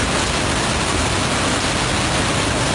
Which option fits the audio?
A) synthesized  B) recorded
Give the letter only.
B